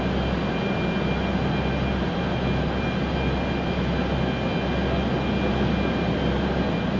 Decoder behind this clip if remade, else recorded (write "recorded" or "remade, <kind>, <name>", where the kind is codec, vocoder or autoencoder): recorded